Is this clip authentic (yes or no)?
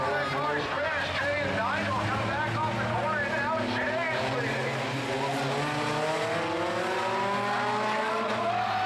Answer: yes